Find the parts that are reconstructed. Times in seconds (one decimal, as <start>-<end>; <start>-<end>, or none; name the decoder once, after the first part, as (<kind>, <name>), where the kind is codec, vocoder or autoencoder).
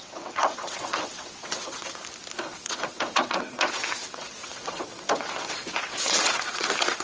0.0-2.0 (vocoder, WaveNeXt); 2.5-7.0